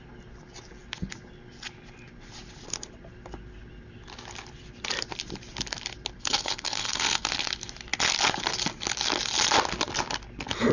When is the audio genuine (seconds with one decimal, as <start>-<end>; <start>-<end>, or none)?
0.0-6.2; 7.3-10.7